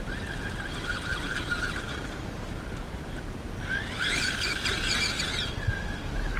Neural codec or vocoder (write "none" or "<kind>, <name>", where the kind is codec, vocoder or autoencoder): none